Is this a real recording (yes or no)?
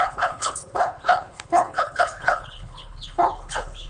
no